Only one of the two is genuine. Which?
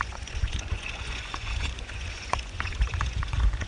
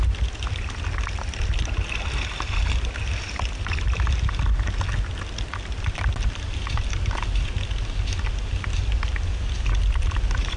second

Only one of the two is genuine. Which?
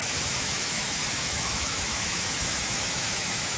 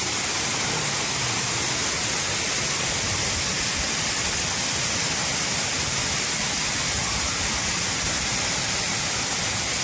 second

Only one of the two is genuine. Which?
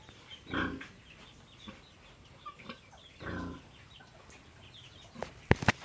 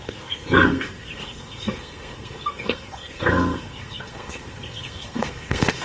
first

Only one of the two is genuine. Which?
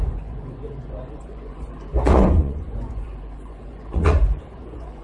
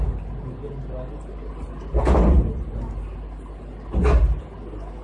second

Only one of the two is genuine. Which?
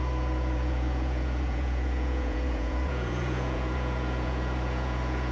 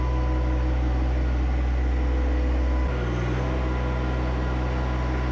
second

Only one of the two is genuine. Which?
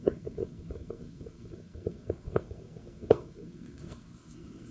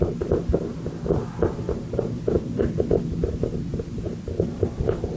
second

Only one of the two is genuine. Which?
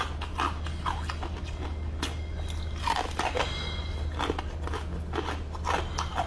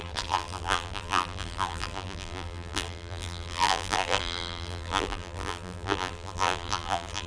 first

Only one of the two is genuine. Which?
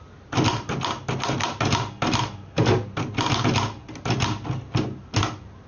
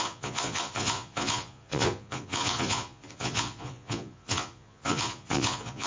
first